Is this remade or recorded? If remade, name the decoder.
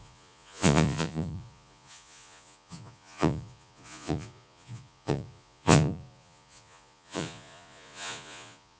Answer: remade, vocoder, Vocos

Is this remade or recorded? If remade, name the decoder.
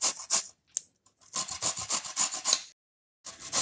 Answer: recorded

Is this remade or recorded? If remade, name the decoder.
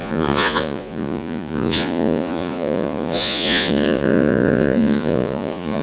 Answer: remade, vocoder, Vocos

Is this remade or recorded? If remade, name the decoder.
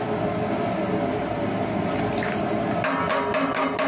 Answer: recorded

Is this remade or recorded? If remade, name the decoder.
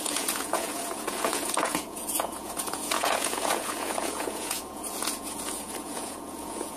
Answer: remade, vocoder, Vocos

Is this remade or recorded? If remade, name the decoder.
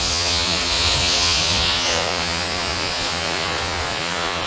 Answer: remade, vocoder, Vocos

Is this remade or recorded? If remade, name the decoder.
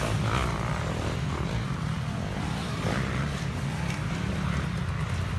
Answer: recorded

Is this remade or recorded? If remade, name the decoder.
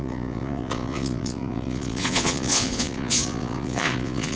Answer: remade, vocoder, Vocos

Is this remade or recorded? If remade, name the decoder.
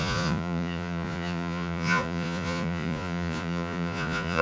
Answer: remade, vocoder, Vocos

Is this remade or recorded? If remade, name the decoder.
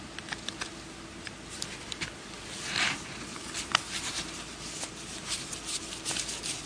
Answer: recorded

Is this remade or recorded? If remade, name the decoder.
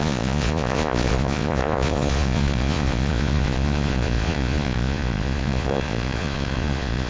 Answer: remade, vocoder, Vocos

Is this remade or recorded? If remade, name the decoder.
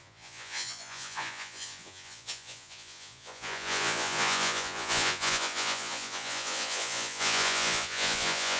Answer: remade, vocoder, Vocos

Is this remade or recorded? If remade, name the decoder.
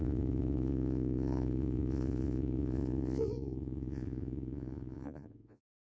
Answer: remade, vocoder, Vocos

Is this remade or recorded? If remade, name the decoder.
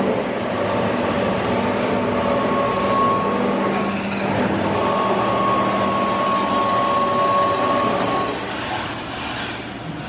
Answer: recorded